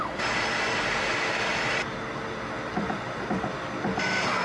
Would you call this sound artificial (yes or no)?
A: yes